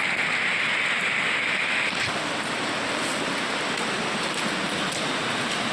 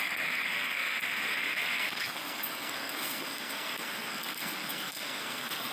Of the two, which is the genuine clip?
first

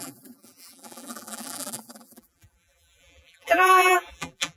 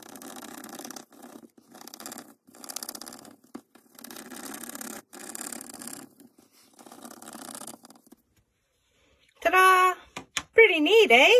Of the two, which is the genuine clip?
second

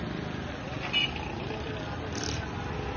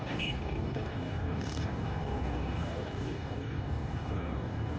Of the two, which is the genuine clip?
first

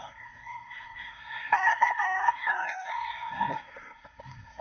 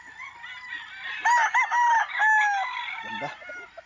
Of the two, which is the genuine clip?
second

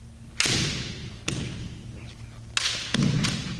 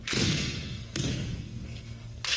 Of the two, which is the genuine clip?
first